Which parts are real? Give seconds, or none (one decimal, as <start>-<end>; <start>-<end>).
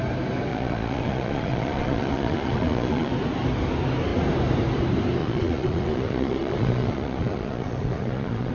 0.0-0.5; 3.1-5.2